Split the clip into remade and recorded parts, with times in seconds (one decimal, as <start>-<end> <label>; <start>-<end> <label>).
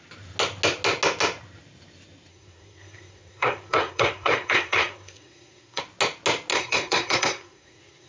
0.0-2.3 recorded; 2.3-5.8 remade; 5.8-6.5 recorded; 6.5-8.1 remade